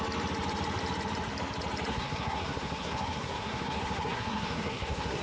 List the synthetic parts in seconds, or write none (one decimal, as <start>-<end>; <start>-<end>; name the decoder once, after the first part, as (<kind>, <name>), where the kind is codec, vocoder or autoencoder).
1.9-5.2 (codec, SNAC)